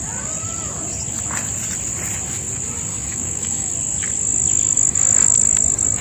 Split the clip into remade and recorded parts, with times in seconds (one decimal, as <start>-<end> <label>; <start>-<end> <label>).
0.0-2.9 recorded; 2.9-3.7 remade; 3.7-6.0 recorded